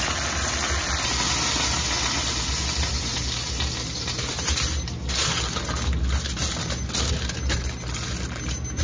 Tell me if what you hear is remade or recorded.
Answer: recorded